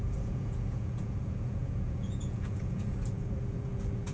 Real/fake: fake